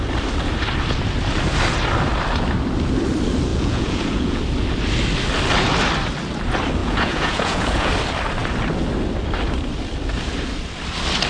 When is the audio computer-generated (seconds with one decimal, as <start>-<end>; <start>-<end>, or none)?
3.5-4.4; 6.8-7.9